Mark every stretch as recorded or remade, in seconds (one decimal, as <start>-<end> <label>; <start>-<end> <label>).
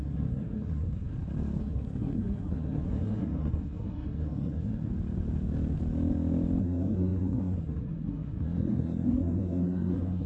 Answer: 0.0-1.1 remade; 1.1-1.6 recorded; 1.6-4.9 remade; 4.9-6.6 recorded; 6.6-10.3 remade